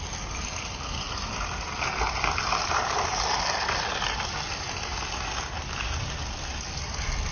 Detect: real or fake real